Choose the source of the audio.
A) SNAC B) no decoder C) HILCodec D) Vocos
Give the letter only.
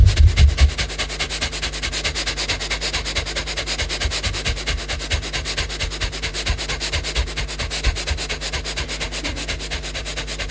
B